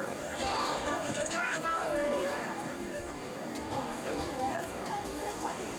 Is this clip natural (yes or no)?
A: no